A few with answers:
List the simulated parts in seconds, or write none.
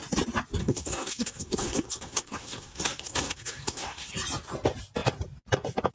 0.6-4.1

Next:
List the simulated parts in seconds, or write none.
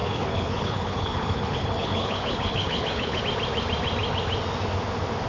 0.0-3.2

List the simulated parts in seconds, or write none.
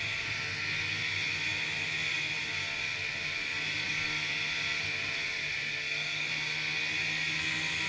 5.8-6.3